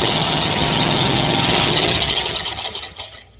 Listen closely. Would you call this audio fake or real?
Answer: fake